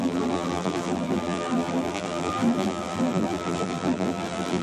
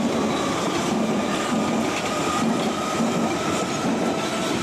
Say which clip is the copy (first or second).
first